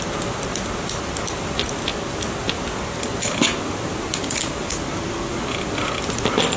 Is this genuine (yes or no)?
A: yes